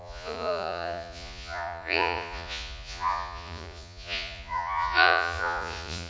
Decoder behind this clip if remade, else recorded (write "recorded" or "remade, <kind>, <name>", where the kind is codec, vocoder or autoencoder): remade, vocoder, Vocos